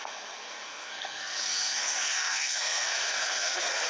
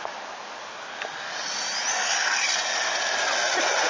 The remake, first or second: first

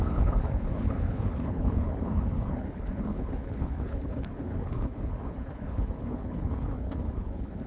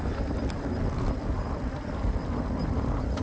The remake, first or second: first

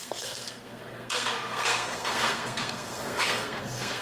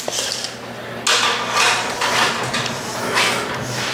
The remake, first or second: first